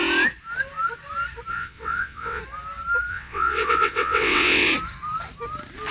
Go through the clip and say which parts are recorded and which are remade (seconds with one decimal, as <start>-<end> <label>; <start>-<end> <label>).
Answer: 0.0-1.5 recorded; 1.5-2.4 remade; 2.4-3.1 recorded; 3.1-4.7 remade; 4.7-5.9 recorded